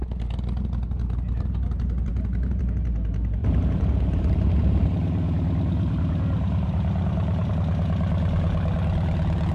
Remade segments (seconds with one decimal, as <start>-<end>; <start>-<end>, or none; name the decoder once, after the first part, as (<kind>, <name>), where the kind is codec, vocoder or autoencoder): 3.4-7.5 (vocoder, BigVGAN v2)